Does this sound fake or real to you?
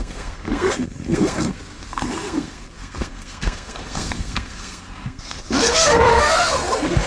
fake